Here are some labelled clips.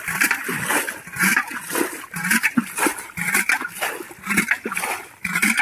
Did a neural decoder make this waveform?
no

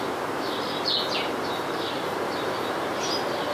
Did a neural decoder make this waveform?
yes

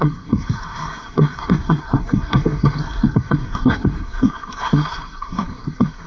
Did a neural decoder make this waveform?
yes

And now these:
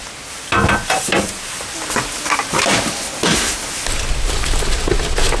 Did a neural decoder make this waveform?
no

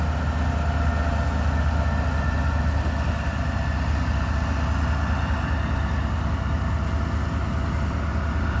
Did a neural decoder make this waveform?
no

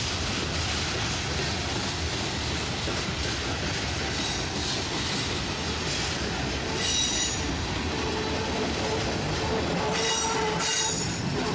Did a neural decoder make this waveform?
no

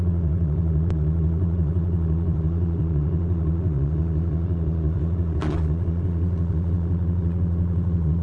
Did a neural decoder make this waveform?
yes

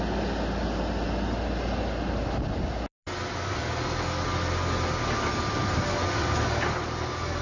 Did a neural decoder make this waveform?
no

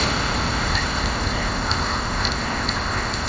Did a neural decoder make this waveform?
yes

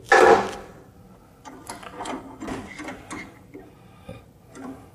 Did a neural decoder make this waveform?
no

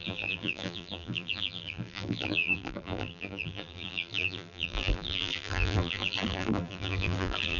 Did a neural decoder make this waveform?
yes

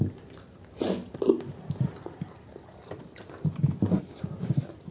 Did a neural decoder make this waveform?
no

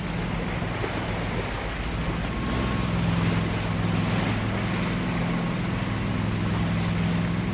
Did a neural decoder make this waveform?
no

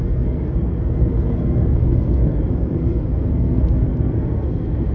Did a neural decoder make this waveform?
yes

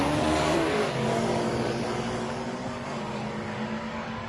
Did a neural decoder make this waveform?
yes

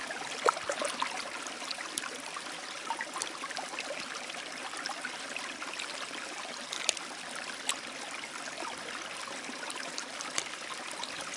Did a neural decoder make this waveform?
no